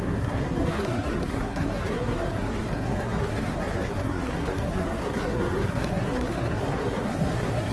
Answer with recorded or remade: remade